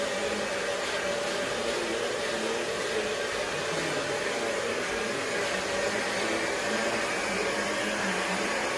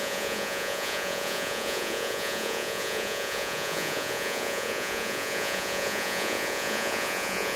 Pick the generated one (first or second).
second